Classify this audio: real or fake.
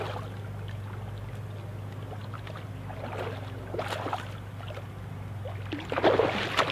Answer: real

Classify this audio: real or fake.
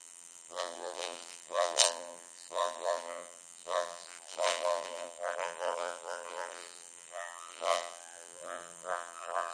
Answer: fake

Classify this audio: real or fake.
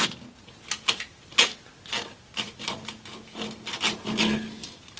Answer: real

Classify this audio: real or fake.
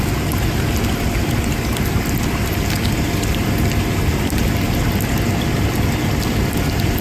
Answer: real